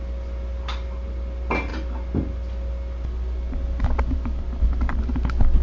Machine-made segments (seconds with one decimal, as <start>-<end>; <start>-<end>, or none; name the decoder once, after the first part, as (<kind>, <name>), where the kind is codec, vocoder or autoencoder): none